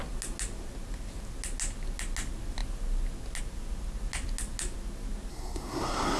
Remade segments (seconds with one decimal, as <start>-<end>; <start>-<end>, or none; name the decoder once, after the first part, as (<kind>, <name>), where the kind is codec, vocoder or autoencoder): 5.3-6.2 (codec, SNAC)